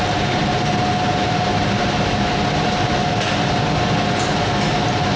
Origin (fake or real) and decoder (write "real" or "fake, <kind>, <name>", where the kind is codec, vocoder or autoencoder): real